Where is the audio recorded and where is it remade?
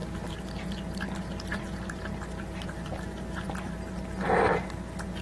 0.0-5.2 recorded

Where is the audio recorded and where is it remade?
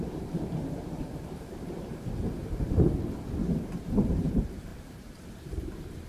0.0-1.9 remade; 1.9-3.8 recorded; 3.8-6.1 remade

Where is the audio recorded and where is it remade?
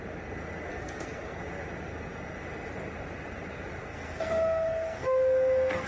0.0-0.7 recorded; 0.7-1.4 remade; 1.4-3.8 recorded; 3.8-5.9 remade